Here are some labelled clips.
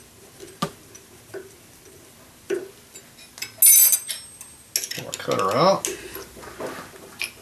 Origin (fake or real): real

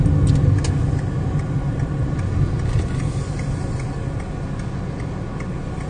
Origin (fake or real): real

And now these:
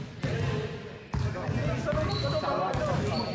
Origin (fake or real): real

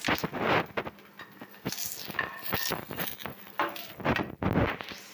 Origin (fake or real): real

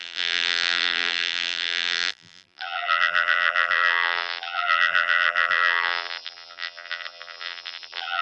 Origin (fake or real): fake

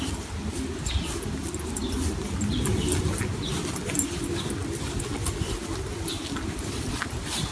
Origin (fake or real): real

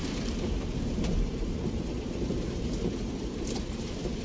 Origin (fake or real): fake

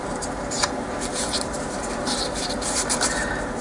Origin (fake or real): fake